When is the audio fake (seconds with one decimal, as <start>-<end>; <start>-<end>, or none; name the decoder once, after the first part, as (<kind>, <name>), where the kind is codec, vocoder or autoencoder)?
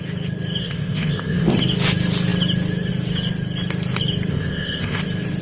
0.6-1.5 (codec, ZipCodec); 4.3-5.0